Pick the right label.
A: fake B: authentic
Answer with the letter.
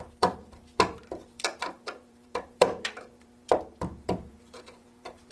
A